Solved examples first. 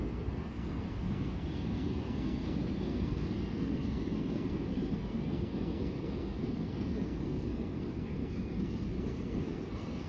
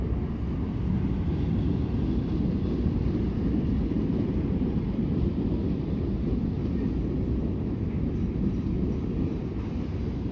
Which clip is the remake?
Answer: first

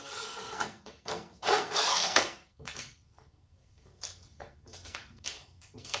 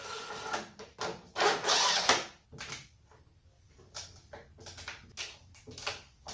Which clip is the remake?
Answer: first